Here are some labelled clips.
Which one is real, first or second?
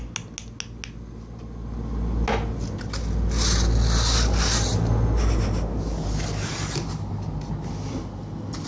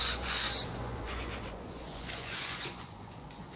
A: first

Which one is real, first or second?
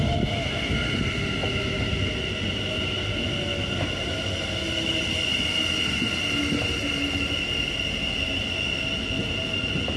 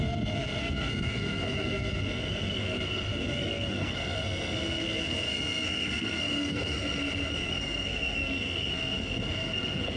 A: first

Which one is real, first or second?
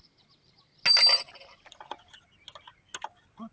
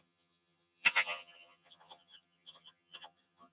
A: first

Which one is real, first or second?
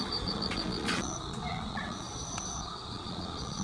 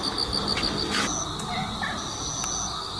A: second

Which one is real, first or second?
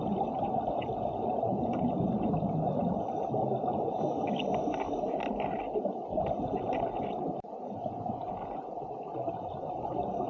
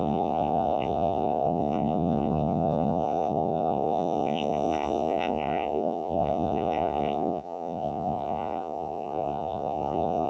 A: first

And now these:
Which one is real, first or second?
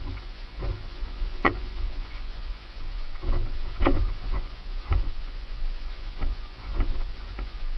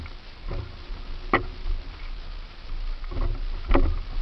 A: second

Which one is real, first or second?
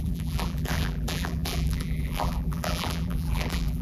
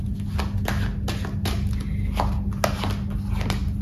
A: second